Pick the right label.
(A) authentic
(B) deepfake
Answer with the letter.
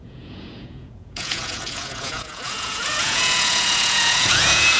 B